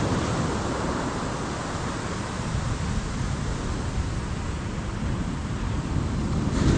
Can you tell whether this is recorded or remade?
recorded